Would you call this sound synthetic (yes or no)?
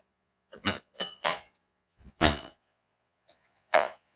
yes